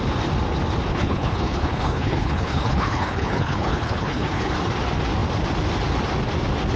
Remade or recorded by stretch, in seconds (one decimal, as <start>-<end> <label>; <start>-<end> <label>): 0.0-0.9 recorded; 0.9-4.5 remade; 4.5-6.8 recorded